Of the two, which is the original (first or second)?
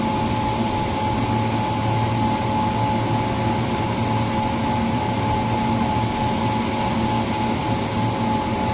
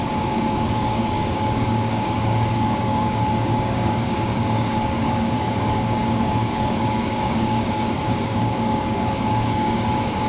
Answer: first